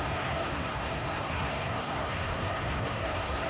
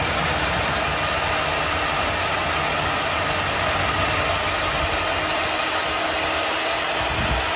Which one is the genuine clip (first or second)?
second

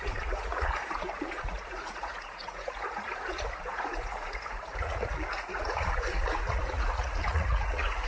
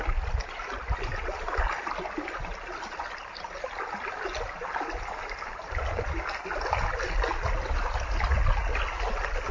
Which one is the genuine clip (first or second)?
second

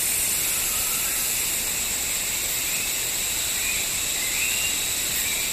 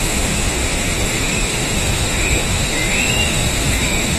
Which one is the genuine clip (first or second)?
first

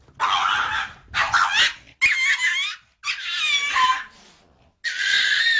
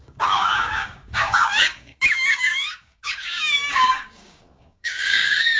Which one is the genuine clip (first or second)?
first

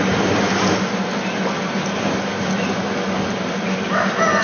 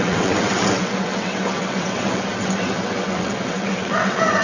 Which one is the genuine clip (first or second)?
first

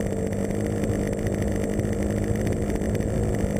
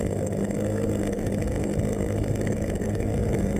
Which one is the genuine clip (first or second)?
first